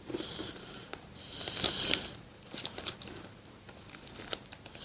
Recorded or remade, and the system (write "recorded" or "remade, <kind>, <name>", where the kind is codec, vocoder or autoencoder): remade, vocoder, BigVGAN v2